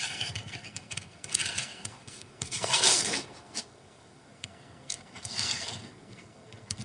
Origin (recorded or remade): remade